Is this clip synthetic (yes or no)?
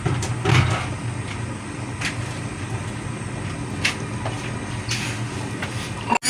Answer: no